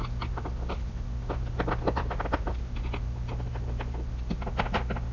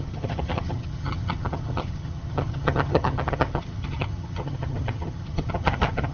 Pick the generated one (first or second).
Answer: second